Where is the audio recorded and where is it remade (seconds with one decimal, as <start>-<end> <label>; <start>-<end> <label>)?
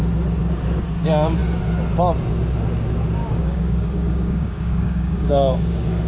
0.0-3.2 recorded; 3.2-6.1 remade